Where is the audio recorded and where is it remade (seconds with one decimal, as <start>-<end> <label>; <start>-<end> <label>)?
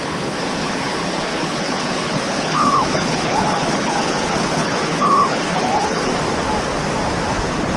0.0-6.1 remade; 6.1-7.3 recorded; 7.3-7.8 remade